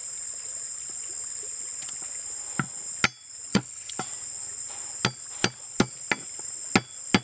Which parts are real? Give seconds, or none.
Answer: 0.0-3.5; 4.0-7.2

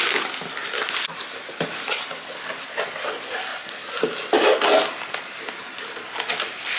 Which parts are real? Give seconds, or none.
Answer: 0.0-6.8